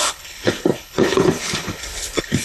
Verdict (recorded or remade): remade